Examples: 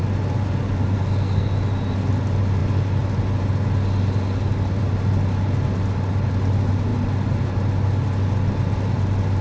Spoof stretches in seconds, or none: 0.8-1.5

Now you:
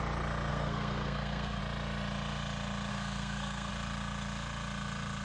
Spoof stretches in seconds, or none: 0.5-1.6; 2.9-3.7

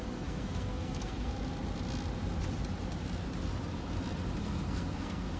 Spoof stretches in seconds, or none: 0.0-1.3; 4.4-5.4

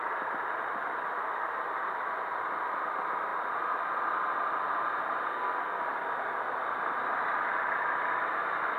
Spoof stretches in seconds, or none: 5.3-5.8

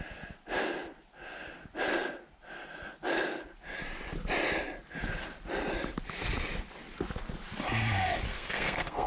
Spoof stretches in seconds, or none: 8.3-9.1